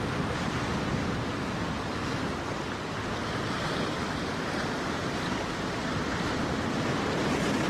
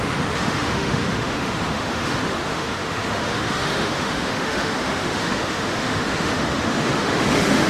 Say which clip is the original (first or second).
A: first